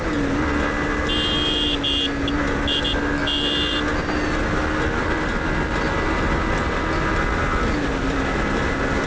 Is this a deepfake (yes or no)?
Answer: no